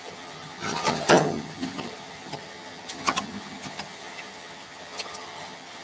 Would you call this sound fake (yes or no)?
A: yes